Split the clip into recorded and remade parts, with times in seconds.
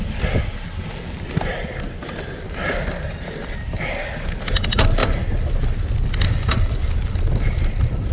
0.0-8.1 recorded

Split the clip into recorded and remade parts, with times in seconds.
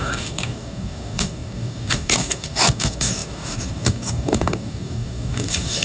0.0-5.8 remade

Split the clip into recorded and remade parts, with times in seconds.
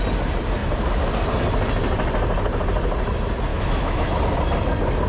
0.0-3.5 recorded; 3.5-4.2 remade; 4.2-5.1 recorded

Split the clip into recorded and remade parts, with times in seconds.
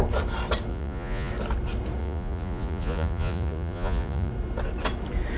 0.0-0.7 recorded; 0.7-1.3 remade; 1.3-2.0 recorded; 2.0-4.3 remade; 4.3-5.4 recorded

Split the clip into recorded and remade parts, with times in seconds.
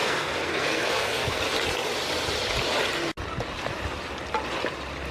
0.0-1.4 remade; 1.4-5.1 recorded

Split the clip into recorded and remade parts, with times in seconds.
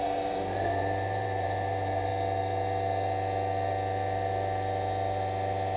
0.0-2.1 remade; 2.1-5.8 recorded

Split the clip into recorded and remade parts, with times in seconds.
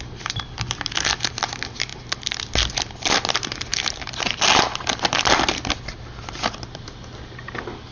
0.0-3.7 recorded; 3.7-4.4 remade; 4.4-7.9 recorded